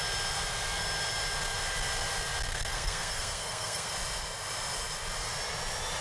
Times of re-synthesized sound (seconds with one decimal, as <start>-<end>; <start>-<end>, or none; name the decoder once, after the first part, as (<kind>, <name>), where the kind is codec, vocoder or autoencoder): 2.5-3.9 (codec, SNAC)